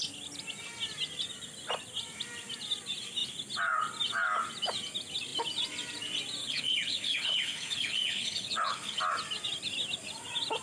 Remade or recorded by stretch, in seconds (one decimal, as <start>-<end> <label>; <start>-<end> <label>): 0.0-6.4 recorded; 6.4-9.0 remade; 9.0-10.6 recorded